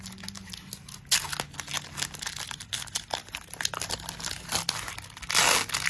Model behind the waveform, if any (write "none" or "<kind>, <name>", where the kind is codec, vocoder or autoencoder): none